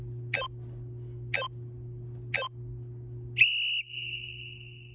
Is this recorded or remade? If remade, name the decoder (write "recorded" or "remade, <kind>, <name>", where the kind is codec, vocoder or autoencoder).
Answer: recorded